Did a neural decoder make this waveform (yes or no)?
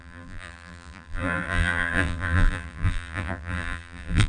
yes